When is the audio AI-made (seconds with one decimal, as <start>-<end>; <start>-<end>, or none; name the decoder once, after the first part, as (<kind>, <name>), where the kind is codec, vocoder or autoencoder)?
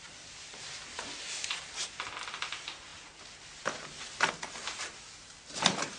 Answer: none